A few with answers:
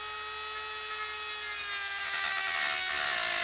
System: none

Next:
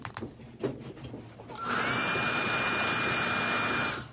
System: none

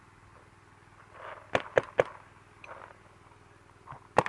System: none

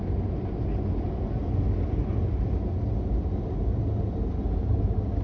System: none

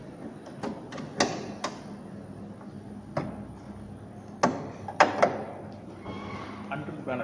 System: none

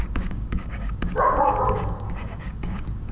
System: codec, DAC